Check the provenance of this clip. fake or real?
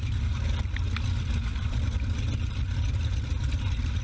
fake